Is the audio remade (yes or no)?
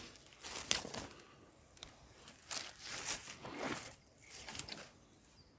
no